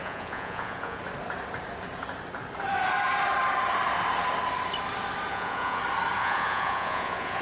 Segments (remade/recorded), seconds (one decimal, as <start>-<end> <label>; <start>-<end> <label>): 0.0-1.0 remade; 1.0-5.3 recorded; 5.3-5.8 remade; 5.8-6.2 recorded; 6.2-7.4 remade